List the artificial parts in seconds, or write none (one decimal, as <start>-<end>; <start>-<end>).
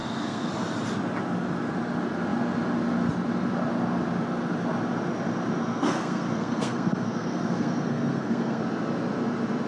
0.0-0.5; 5.6-8.6